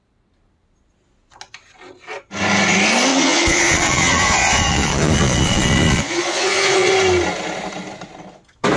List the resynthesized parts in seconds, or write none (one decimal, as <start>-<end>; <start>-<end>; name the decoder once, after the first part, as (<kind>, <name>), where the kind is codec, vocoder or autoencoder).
3.1-6.9 (vocoder, Vocos)